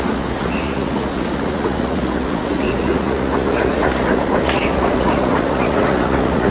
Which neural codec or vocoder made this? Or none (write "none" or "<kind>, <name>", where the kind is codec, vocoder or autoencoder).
vocoder, Vocos